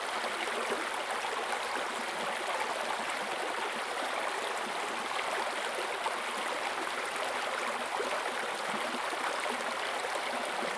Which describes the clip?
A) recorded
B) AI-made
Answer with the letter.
A